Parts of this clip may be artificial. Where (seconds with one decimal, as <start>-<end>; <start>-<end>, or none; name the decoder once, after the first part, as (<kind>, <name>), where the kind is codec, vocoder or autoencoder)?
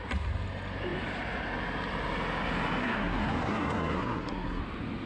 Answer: 2.8-4.6 (codec, SNAC)